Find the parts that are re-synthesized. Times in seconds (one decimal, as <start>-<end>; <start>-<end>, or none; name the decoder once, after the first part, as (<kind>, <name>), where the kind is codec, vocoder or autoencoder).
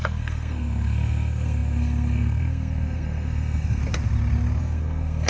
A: 0.0-3.8 (codec, SNAC); 4.6-5.3